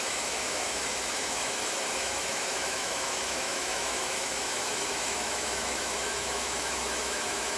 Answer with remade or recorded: remade